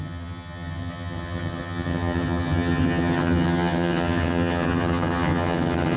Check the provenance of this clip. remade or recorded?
remade